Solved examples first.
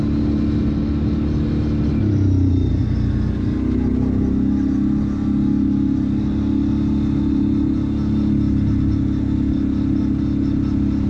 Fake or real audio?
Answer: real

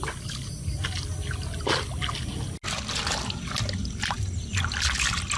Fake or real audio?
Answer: real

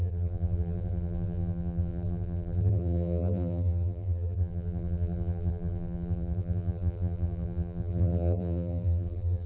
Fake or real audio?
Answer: fake